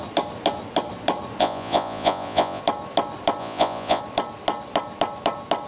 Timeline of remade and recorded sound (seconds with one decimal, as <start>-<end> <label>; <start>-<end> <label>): 0.0-1.4 recorded; 1.4-2.6 remade; 2.6-3.4 recorded; 3.4-4.0 remade; 4.0-5.7 recorded